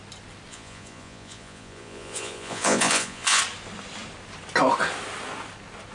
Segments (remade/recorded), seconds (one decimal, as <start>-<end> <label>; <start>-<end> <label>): 0.0-0.5 recorded; 0.5-3.4 remade; 3.4-5.9 recorded